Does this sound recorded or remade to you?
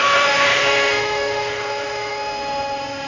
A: remade